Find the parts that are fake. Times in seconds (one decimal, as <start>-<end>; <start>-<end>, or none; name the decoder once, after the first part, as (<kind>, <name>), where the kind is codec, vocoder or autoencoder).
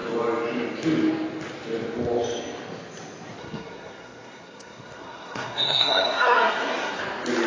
3.4-7.0 (codec, SNAC)